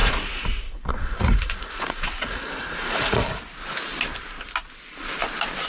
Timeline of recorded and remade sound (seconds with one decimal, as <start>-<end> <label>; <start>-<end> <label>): 0.0-3.4 remade; 3.4-5.7 recorded